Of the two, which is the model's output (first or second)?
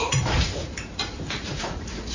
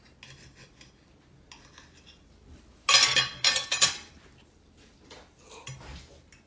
first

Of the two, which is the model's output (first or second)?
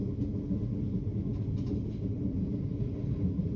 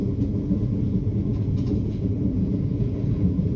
second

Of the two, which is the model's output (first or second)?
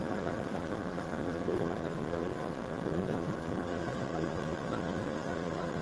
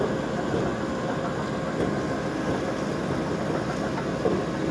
first